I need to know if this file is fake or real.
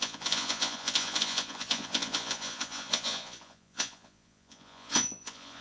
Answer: fake